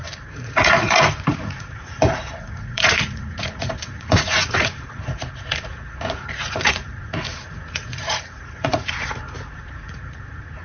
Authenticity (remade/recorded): remade